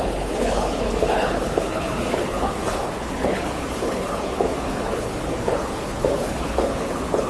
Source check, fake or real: fake